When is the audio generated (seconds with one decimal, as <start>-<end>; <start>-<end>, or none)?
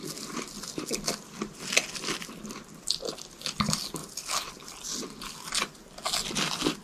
none